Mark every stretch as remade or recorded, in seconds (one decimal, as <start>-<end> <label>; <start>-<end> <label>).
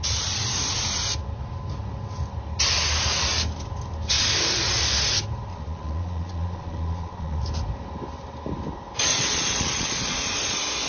0.0-5.5 recorded; 5.5-7.4 remade; 7.4-9.1 recorded; 9.1-10.9 remade